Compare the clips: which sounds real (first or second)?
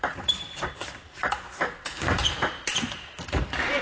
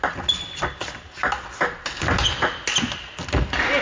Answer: second